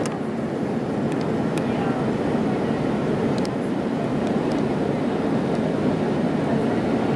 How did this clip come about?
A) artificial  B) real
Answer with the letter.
B